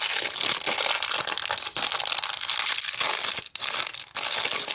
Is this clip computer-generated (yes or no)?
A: no